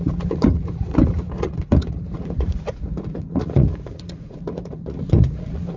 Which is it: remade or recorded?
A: remade